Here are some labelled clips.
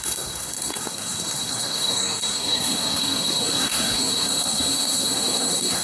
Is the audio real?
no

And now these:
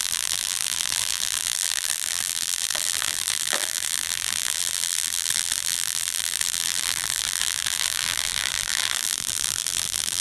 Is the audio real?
no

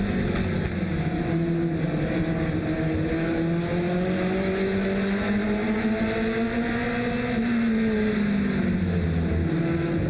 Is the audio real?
yes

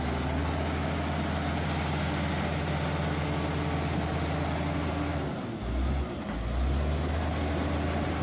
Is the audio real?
yes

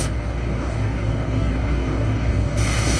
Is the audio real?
no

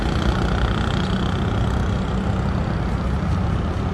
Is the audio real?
yes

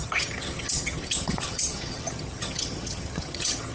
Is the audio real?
no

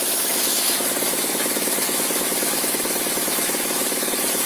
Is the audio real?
no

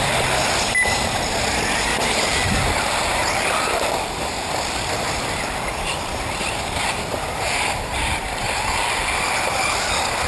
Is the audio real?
no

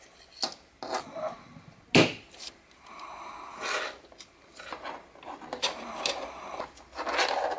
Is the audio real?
yes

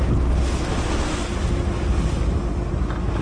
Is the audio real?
yes